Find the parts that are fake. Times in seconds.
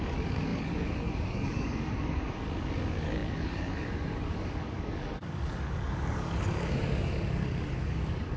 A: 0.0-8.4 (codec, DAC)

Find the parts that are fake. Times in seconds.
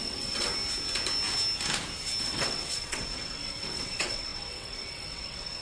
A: 0.0-0.5 (vocoder, WaveNeXt); 2.2-5.6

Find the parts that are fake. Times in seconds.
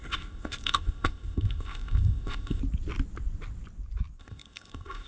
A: 0.0-2.6 (codec, ZipCodec); 4.2-5.1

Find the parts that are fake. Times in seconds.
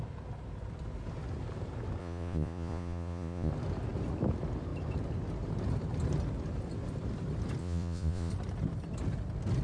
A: 2.0-3.5 (vocoder, Vocos); 7.6-8.3